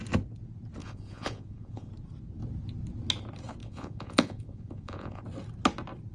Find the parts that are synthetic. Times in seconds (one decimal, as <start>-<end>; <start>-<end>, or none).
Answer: 0.8-1.9; 3.6-5.2